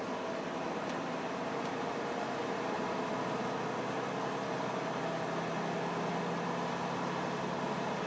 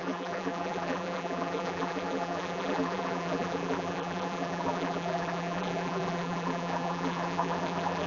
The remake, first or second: second